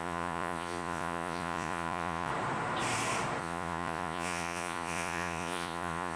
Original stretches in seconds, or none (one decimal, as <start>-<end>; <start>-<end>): 2.3-3.4